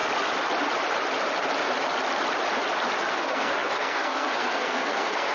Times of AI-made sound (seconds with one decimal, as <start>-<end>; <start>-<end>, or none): 3.1-5.3